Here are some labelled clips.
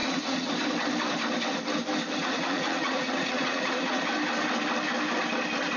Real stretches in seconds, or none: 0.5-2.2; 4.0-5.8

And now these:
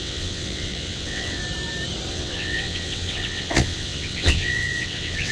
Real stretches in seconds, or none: 1.4-2.1